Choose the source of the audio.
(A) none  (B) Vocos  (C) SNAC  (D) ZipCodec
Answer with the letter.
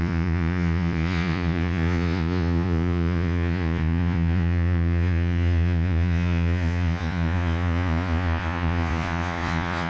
B